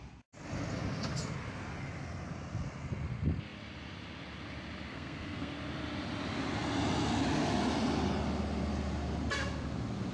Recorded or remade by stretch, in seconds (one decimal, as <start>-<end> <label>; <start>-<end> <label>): 0.0-4.9 recorded; 4.9-5.5 remade; 5.5-10.1 recorded